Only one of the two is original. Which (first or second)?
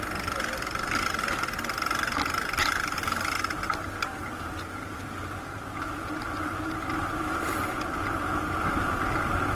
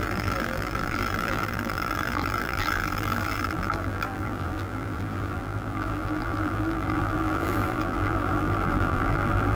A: first